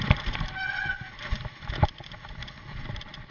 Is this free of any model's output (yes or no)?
yes